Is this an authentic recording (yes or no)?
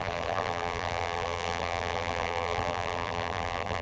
no